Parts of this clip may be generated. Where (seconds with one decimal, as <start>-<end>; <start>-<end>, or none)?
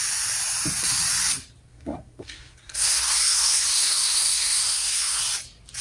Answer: 1.7-5.2